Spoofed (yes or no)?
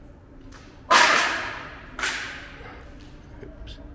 no